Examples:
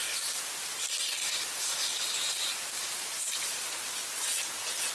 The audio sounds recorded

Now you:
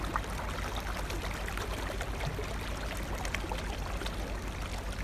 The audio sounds recorded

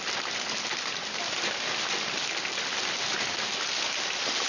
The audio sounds recorded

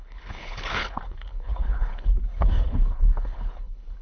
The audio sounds remade